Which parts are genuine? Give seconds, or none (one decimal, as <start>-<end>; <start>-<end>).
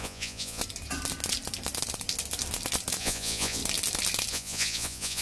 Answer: 0.6-3.0; 3.6-4.3